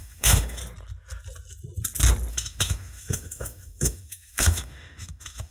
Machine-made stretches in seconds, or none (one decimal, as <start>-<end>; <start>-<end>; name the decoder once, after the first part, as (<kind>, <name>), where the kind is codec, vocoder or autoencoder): 0.0-0.6 (autoencoder, DAC-VAE); 2.3-5.5